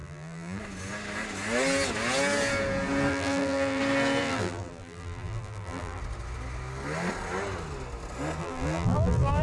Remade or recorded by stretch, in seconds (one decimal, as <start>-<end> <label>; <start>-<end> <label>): 0.0-0.6 remade; 0.6-3.1 recorded; 3.1-3.8 remade; 3.8-4.2 recorded; 4.2-6.0 remade; 6.0-8.4 recorded; 8.4-9.4 remade